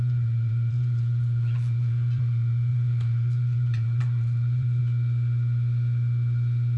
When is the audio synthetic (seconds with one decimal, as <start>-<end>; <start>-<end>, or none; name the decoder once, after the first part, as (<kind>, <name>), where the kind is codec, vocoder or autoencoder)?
0.0-4.8 (vocoder, Vocos)